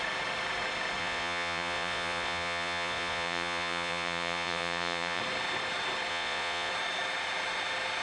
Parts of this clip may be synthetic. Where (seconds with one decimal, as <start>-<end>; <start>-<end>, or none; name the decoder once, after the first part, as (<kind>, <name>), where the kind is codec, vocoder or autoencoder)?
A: 1.0-5.2 (vocoder, Vocos); 6.1-6.7